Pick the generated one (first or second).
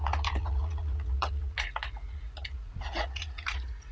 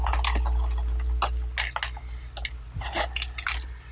first